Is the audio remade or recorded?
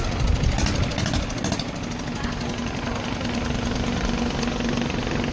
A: recorded